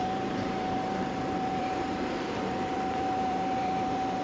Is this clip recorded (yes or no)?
no